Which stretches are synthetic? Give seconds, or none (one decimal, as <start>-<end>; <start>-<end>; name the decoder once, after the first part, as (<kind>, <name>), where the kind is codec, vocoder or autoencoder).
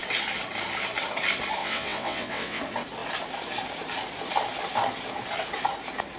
1.6-2.6 (vocoder, WaveNeXt)